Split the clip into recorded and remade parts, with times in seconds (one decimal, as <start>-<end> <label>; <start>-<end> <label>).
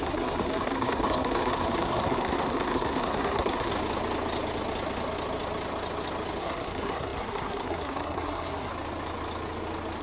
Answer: 0.0-3.7 remade; 3.7-6.4 recorded; 6.4-8.7 remade; 8.7-10.0 recorded